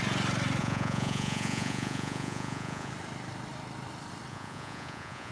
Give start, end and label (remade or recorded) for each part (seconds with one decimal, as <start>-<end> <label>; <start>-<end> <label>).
0.0-0.6 recorded; 0.6-2.9 remade; 2.9-4.3 recorded; 4.3-5.3 remade